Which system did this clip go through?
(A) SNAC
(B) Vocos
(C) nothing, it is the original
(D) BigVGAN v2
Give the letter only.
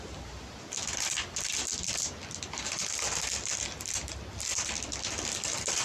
C